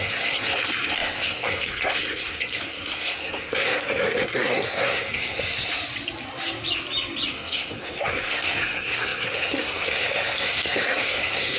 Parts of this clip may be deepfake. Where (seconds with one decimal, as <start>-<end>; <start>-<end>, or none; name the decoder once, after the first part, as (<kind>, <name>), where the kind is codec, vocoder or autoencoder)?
0.0-5.7 (codec, SNAC); 7.3-11.6